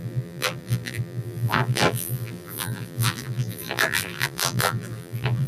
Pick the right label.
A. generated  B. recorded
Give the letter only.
A